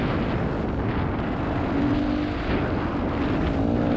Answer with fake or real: real